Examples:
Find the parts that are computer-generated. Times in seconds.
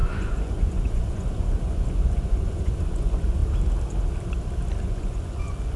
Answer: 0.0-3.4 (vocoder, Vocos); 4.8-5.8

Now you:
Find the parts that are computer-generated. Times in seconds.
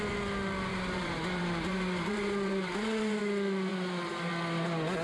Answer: 0.7-3.2 (vocoder, BigVGAN v2); 3.7-4.3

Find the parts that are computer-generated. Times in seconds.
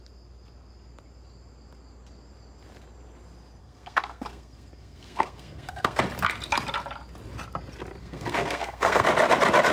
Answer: 3.6-6.0 (codec, SNAC); 8.0-9.1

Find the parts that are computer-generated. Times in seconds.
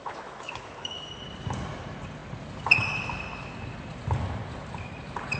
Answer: 0.0-1.1 (autoencoder, DAC-VAE)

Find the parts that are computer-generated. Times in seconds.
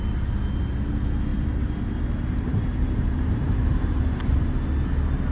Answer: 1.3-4.5 (vocoder, BigVGAN v2)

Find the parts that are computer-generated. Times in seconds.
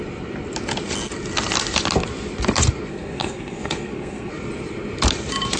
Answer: 2.9-4.3 (codec, SNAC)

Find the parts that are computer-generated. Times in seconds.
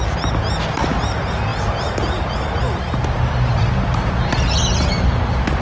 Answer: none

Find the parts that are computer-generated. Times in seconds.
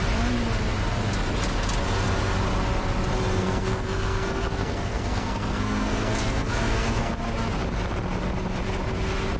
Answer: 3.4-7.1 (codec, SNAC)